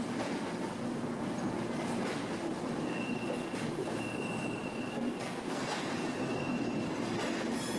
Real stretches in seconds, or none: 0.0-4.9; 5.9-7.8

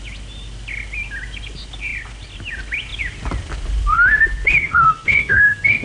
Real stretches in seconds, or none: 0.0-4.6

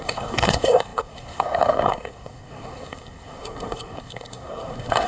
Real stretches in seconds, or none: none

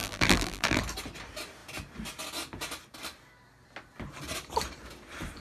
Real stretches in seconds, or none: 0.8-5.4

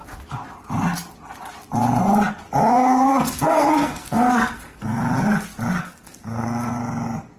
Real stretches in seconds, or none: 0.0-2.7; 5.0-5.8; 6.8-7.4